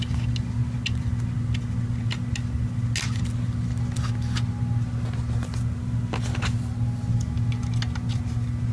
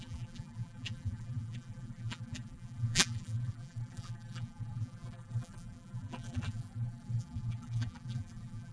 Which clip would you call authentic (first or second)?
first